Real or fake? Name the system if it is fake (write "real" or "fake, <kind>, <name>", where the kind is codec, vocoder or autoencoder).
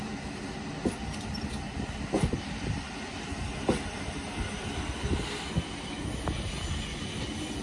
real